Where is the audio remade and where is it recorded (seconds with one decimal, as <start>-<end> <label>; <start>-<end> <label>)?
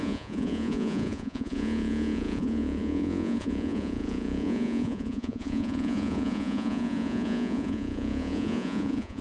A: 0.0-9.2 remade